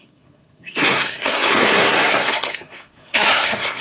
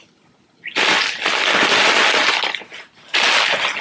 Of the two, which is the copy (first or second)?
first